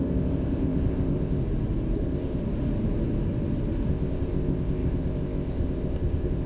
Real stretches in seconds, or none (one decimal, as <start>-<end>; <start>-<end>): 1.4-2.0; 2.4-3.9